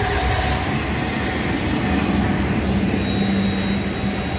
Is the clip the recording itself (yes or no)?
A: yes